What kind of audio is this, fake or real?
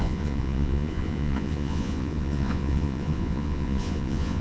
fake